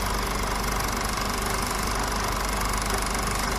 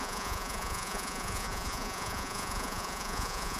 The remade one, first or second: second